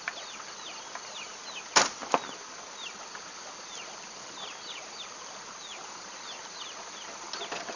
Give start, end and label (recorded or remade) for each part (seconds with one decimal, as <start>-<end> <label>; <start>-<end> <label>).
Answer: 0.0-7.8 recorded